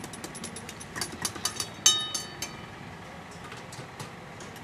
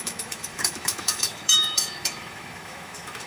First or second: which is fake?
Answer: second